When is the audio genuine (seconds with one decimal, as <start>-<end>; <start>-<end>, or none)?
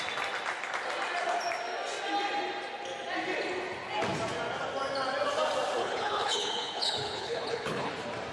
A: 0.0-5.8; 7.9-8.3